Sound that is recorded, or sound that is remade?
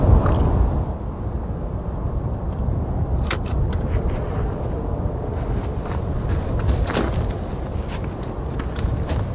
recorded